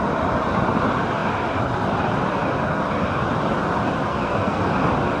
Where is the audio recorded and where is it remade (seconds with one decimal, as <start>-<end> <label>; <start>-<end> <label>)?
0.0-4.1 recorded; 4.1-4.7 remade; 4.7-5.2 recorded